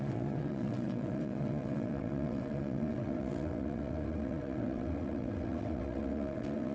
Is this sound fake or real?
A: fake